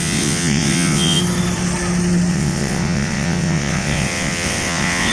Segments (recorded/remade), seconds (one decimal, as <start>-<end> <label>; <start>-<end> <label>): 0.0-1.2 remade; 1.2-2.3 recorded; 2.3-5.1 remade